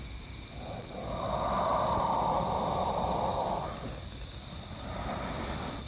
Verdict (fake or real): real